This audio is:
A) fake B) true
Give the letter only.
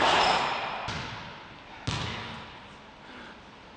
B